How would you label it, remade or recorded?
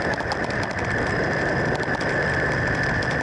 recorded